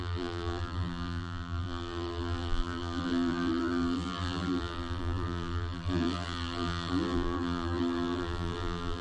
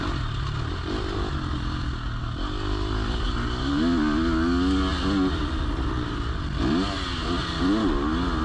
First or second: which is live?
second